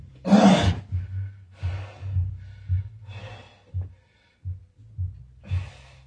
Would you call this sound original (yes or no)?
yes